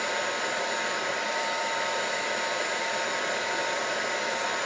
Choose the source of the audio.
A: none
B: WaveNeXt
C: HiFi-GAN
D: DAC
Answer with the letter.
A